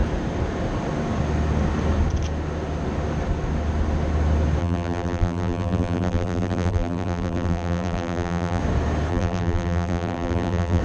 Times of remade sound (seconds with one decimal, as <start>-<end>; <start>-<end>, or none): 4.6-8.6; 9.1-10.8